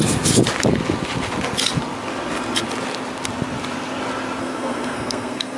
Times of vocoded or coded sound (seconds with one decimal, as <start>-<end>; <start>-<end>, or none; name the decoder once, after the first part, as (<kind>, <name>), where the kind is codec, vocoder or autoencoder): 4.4-5.6 (codec, SNAC)